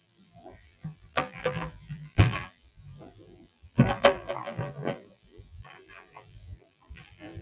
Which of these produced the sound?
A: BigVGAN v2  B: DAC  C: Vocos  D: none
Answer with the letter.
A